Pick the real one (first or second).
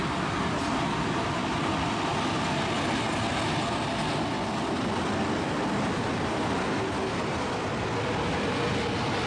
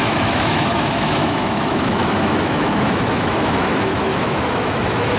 first